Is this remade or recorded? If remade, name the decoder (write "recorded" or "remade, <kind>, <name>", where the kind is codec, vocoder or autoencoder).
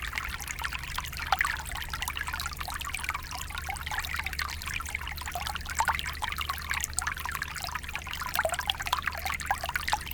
recorded